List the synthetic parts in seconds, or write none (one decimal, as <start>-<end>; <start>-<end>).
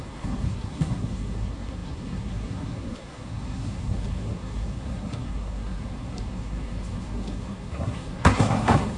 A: 0.0-9.0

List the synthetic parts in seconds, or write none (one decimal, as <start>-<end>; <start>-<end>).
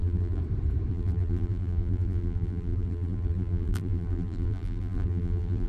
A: 0.0-0.4; 0.9-5.7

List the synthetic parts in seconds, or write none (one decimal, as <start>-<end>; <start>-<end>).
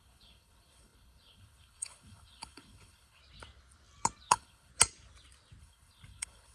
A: 0.0-3.2; 4.3-4.7; 5.6-6.5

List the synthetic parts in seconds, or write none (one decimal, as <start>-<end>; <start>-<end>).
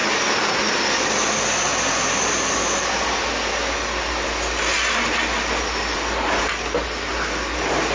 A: none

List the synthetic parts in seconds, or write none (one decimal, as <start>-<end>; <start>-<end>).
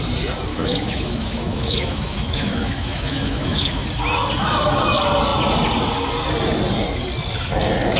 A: 0.5-3.8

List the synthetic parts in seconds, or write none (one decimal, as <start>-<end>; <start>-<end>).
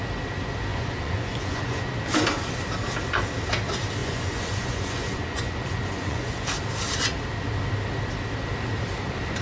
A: 0.7-1.9; 4.0-6.5